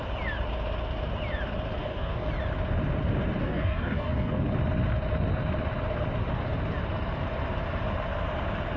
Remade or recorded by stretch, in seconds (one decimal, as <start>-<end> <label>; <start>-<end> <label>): 0.0-1.8 recorded; 1.8-2.3 remade; 2.3-3.4 recorded; 3.4-4.4 remade; 4.4-8.8 recorded